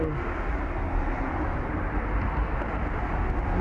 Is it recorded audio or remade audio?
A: recorded